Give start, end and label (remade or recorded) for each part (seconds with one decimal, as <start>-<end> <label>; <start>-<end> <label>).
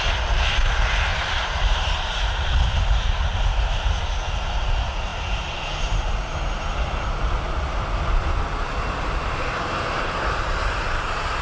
0.0-1.1 recorded; 1.1-4.0 remade; 4.0-11.4 recorded